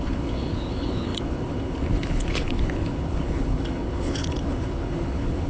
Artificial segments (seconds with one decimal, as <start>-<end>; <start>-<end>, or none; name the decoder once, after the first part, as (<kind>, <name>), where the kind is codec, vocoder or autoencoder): 0.0-5.5 (codec, HILCodec)